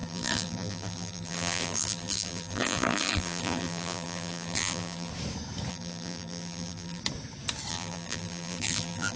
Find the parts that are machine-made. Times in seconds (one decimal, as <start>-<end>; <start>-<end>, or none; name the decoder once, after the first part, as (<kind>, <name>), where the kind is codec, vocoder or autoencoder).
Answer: 0.0-5.1 (vocoder, BigVGAN v2); 5.7-7.0; 7.7-9.2